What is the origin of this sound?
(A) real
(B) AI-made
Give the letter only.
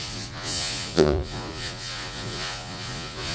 B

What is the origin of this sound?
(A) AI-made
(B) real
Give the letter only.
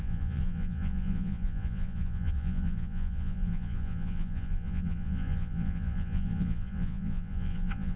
A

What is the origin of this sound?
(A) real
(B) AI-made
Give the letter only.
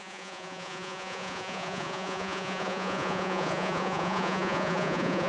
B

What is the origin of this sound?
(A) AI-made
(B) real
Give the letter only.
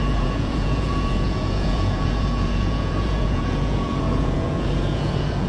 A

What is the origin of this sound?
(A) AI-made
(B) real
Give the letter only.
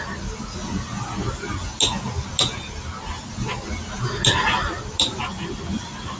B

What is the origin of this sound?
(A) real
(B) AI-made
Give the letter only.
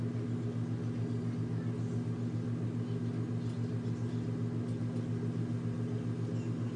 A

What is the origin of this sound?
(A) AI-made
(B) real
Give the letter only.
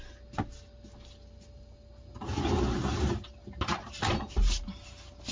B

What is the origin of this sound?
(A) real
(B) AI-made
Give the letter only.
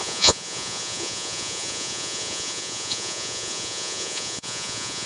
B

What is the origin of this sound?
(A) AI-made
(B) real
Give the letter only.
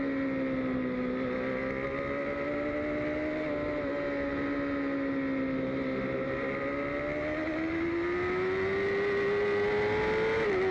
B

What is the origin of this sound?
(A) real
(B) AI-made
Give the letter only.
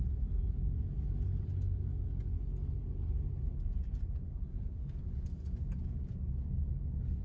A